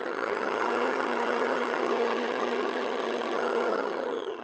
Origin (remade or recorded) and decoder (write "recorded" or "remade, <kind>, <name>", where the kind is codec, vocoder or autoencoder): remade, vocoder, HiFi-GAN